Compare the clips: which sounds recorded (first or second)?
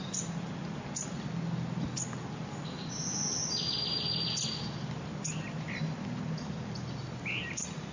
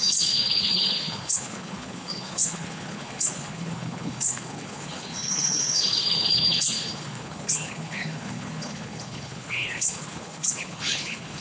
first